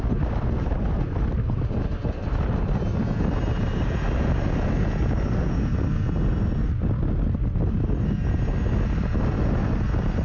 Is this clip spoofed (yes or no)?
no